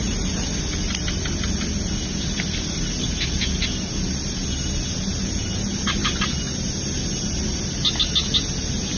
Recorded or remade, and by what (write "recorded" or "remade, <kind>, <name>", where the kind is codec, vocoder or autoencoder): recorded